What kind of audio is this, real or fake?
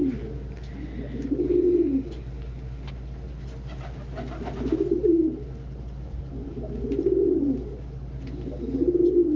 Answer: real